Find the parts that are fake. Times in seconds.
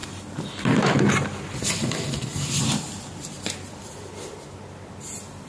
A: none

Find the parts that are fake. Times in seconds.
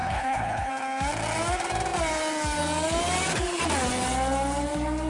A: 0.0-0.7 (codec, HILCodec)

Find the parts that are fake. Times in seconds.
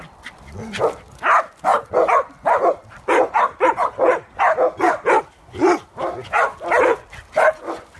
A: none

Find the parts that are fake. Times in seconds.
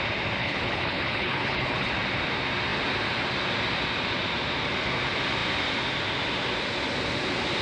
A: 0.4-1.9 (codec, HILCodec)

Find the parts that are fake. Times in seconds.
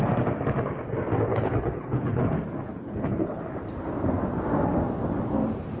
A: 1.3-2.3 (codec, HILCodec); 2.7-3.4